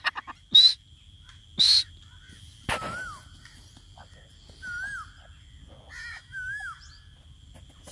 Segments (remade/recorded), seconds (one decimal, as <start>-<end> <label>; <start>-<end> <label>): 0.0-6.0 recorded; 6.0-6.8 remade; 6.8-7.9 recorded

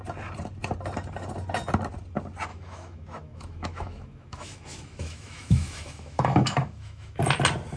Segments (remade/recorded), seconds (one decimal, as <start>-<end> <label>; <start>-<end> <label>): 0.0-2.5 recorded; 2.5-7.2 remade; 7.2-7.8 recorded

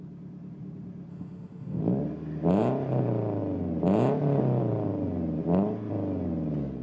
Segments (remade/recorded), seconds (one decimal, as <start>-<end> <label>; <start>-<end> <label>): 0.0-1.1 recorded; 1.1-1.8 remade; 1.8-6.8 recorded

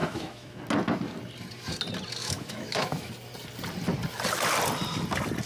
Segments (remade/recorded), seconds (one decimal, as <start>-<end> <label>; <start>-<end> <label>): 0.0-0.6 remade; 0.6-2.2 recorded; 2.2-3.1 remade; 3.1-5.5 recorded